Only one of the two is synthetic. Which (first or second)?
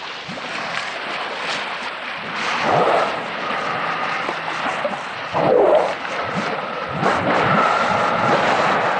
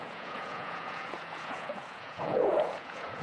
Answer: second